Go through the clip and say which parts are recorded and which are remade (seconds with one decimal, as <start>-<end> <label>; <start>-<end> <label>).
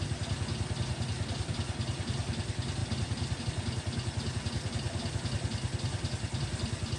0.0-2.8 recorded; 2.8-3.4 remade; 3.4-7.0 recorded